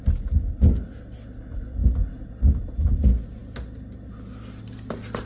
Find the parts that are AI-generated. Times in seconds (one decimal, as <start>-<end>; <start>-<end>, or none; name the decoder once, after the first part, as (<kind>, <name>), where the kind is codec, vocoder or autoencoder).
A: none